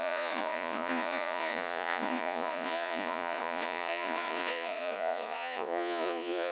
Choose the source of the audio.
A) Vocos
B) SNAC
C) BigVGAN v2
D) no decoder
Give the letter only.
A